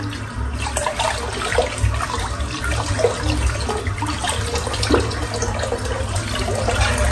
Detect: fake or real real